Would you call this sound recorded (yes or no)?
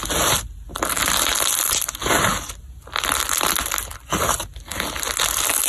yes